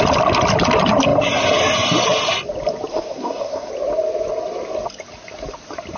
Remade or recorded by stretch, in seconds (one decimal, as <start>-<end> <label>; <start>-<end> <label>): 0.0-2.9 recorded; 2.9-3.7 remade; 3.7-6.0 recorded